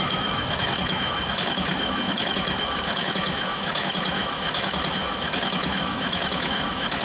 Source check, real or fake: fake